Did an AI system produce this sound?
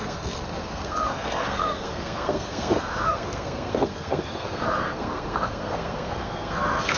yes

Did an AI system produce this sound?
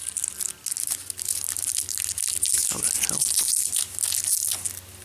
no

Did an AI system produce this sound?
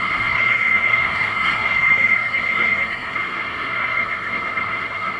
yes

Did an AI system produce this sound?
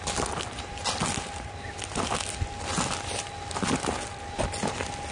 no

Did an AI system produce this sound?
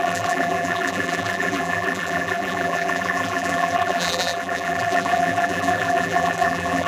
yes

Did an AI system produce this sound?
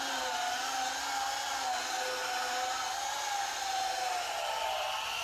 no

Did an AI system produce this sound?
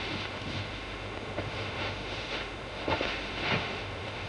yes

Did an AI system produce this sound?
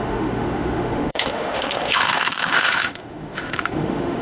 yes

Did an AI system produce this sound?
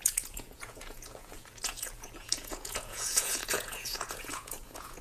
yes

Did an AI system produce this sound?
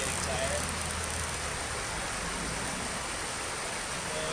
no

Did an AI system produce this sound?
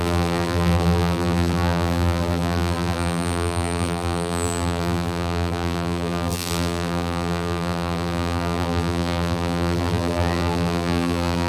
yes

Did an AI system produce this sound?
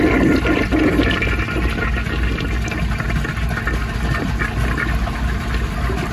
no